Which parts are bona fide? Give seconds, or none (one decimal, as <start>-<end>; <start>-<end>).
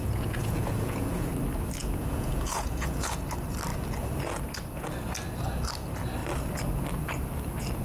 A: 1.3-1.8; 3.2-7.8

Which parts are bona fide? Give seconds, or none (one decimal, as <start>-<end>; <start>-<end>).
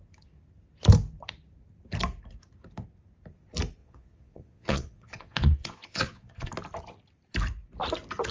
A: 0.0-3.8; 6.5-8.3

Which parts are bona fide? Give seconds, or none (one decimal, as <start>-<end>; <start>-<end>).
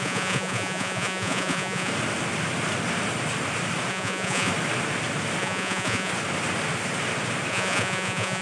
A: 1.9-3.9; 4.5-5.4; 6.1-7.5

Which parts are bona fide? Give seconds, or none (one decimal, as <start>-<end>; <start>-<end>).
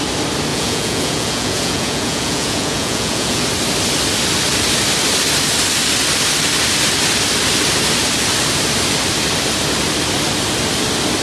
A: 0.0-0.5; 3.4-11.2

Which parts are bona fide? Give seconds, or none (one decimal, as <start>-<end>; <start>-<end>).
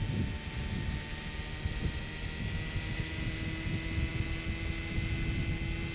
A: 0.0-5.9